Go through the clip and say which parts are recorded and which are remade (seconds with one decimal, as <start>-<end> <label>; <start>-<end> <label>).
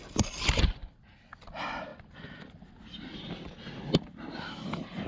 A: 0.0-5.1 recorded